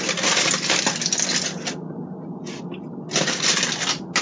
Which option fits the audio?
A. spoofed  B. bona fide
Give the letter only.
B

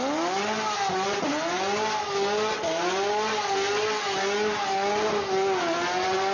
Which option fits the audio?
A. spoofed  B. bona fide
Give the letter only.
B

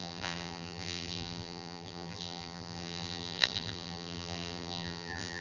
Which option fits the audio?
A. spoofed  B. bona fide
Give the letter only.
A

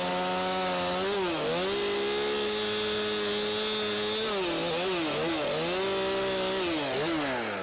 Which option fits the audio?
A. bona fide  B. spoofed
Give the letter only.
A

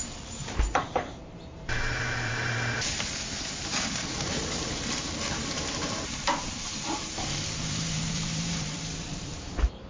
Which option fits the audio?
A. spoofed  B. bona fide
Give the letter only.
A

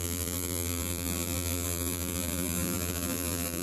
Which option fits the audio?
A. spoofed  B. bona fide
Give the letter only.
A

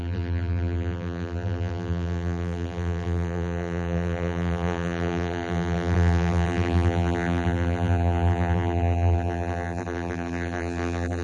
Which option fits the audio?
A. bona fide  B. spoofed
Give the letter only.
B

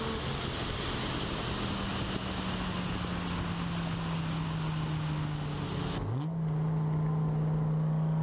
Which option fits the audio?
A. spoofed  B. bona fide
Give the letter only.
B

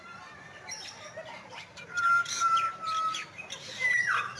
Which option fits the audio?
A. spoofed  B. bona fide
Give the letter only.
A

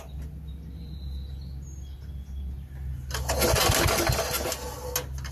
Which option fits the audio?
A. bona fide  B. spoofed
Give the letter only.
A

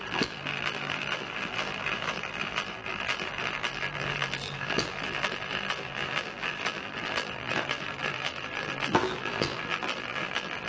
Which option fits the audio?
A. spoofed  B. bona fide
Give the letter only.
A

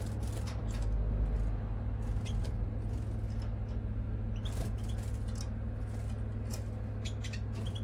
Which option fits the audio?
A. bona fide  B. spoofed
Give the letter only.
A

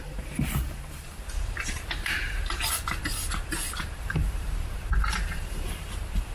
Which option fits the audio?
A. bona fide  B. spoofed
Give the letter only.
B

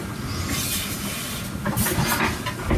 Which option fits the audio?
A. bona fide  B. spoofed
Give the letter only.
A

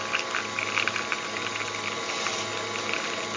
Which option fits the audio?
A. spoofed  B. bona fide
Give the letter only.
B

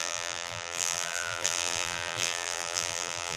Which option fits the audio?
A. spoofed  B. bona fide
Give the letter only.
A